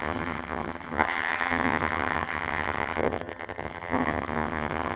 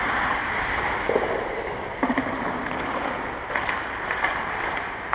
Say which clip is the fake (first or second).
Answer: first